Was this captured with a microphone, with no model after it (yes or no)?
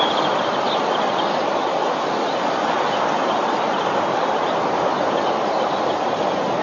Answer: yes